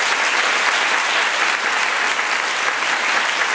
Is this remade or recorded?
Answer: recorded